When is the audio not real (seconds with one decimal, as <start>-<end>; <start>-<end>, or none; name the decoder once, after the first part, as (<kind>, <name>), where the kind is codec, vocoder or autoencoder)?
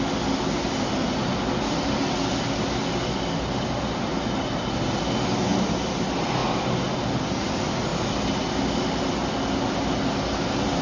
none